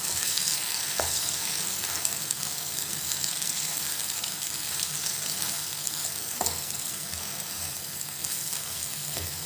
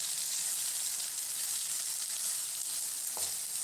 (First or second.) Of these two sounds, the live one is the second